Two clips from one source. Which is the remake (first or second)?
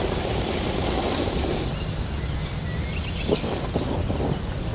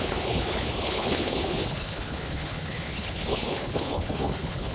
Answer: second